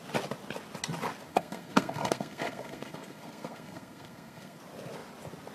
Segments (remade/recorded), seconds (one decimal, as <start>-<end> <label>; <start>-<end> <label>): 0.0-1.3 recorded; 1.3-4.6 remade; 4.6-5.5 recorded